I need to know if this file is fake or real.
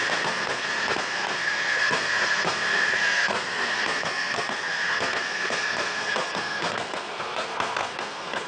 fake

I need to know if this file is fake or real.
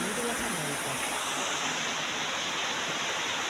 real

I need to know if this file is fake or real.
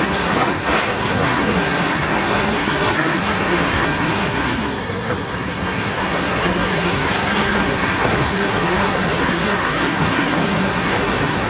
fake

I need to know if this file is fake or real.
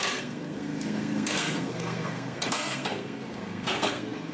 fake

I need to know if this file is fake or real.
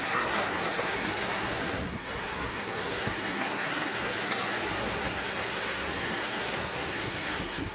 fake